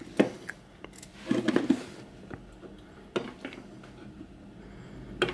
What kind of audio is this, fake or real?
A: real